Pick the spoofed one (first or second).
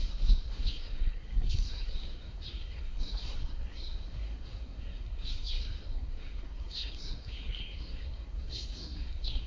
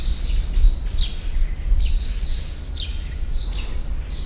first